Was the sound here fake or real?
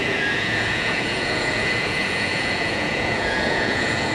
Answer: fake